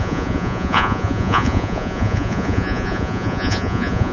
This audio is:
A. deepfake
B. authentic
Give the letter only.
A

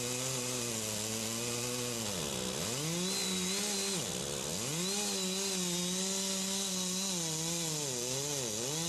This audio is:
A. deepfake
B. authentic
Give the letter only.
B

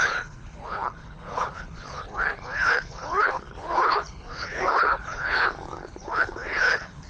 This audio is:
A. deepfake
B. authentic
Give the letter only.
A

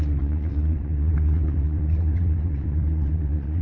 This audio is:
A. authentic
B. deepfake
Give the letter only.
B